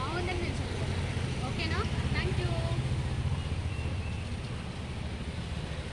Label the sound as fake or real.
real